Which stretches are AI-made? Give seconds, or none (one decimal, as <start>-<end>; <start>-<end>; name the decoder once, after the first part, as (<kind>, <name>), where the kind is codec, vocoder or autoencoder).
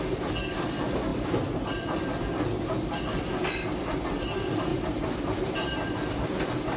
1.1-3.0 (vocoder, BigVGAN v2); 4.7-6.8